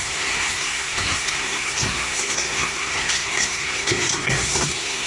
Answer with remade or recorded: remade